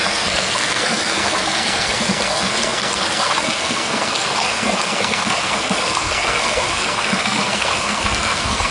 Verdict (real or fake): fake